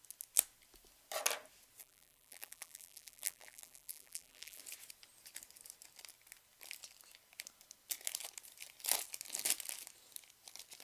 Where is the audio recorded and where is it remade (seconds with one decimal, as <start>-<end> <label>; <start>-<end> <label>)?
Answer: 0.0-1.8 recorded; 1.8-4.6 remade; 4.6-10.8 recorded